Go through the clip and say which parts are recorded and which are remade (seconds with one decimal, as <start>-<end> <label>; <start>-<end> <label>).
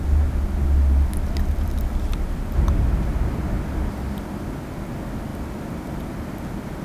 0.0-6.8 recorded